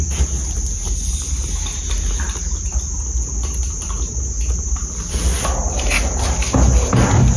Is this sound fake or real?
real